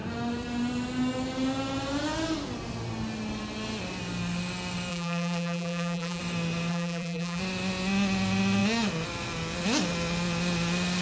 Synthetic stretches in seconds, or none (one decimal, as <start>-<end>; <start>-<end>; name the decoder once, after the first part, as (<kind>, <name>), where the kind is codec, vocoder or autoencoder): 4.9-6.2 (vocoder, BigVGAN v2); 6.7-7.4